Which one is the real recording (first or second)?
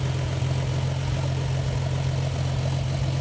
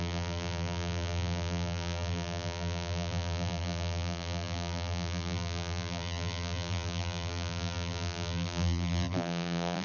first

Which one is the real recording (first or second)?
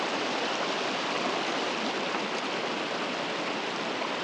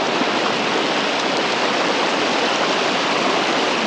first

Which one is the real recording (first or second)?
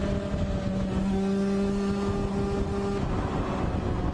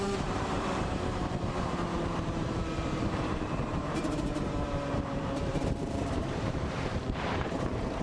first